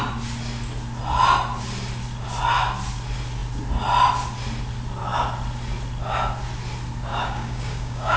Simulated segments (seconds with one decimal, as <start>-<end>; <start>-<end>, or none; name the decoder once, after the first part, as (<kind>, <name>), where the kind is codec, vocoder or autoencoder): 7.1-8.2 (codec, DAC)